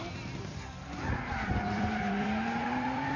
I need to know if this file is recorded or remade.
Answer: remade